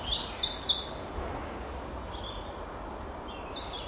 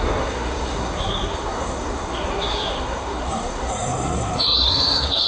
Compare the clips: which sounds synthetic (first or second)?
second